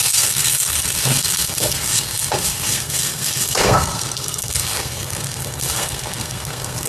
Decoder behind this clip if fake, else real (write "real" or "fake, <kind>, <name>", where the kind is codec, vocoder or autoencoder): fake, codec, SNAC